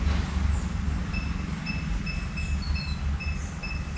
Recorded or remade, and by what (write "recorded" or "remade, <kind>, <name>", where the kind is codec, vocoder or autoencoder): recorded